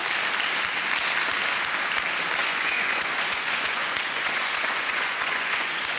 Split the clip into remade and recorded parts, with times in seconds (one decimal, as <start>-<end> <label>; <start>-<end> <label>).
0.0-2.4 recorded; 2.4-6.0 remade